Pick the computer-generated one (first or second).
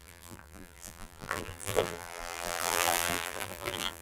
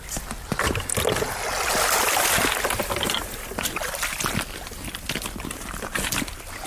first